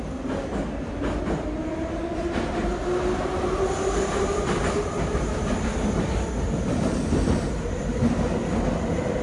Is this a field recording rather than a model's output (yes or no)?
yes